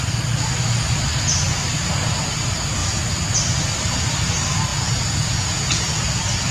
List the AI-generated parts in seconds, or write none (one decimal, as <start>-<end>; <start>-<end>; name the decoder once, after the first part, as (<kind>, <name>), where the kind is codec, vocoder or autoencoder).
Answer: 4.7-6.1 (vocoder, Vocos)